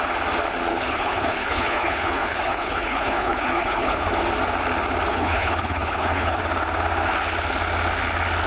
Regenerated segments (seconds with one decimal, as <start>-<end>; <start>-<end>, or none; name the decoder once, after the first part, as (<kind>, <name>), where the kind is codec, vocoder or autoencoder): 0.7-4.1 (codec, HILCodec); 5.1-6.4